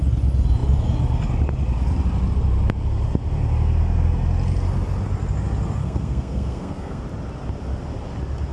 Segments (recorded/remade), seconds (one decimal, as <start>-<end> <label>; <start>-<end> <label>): 0.0-5.8 recorded; 5.8-7.0 remade; 7.0-8.5 recorded